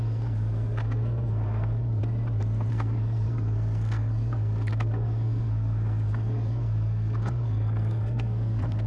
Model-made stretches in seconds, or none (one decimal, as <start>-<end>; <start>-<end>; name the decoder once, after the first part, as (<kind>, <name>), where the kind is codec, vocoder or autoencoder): 0.0-2.0 (codec, SNAC); 2.7-8.9